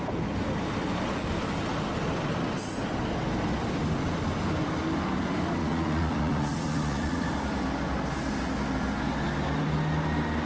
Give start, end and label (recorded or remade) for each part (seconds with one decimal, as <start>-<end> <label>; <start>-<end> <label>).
0.0-5.6 recorded; 5.6-7.3 remade; 7.3-10.5 recorded